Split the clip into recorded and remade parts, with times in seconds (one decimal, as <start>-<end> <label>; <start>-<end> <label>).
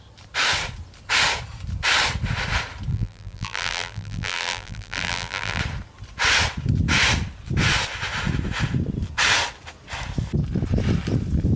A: 0.0-2.9 recorded; 2.9-5.6 remade; 5.6-11.6 recorded